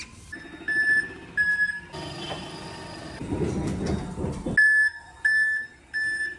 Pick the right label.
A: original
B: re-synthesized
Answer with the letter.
A